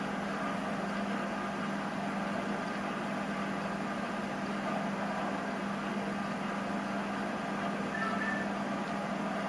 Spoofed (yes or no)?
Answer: no